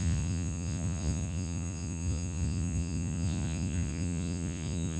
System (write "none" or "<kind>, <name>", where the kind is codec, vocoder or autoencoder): vocoder, Vocos